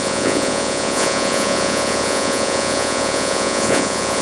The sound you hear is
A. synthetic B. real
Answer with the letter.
A